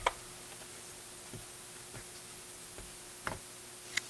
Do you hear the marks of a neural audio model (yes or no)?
no